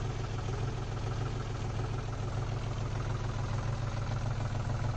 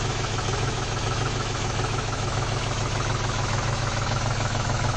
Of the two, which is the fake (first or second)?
second